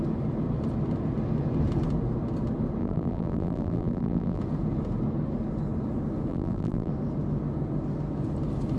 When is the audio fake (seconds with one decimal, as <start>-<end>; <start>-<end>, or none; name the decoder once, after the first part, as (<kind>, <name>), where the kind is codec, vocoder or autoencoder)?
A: 2.8-4.4 (vocoder, BigVGAN v2); 6.3-6.9